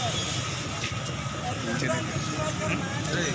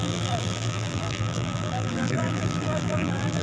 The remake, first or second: second